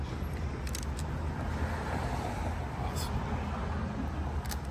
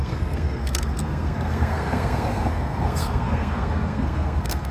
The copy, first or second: second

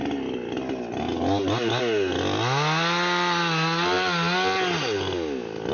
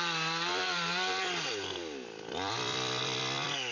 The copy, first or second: second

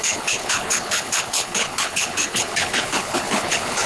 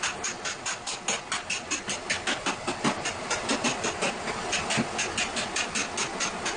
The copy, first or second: first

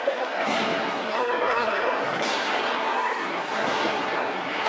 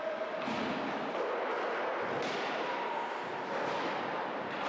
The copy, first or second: first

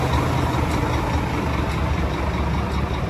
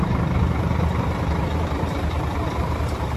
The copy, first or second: second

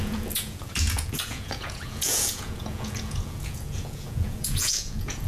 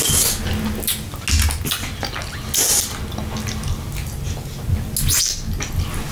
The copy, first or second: first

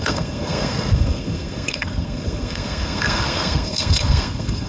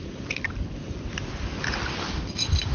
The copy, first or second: first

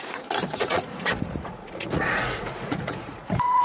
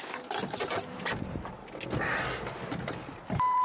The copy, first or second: first